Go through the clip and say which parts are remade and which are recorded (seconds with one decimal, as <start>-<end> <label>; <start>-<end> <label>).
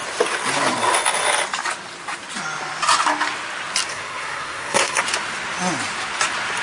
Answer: 0.0-3.9 recorded; 3.9-5.0 remade; 5.0-6.6 recorded